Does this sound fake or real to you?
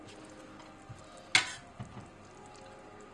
real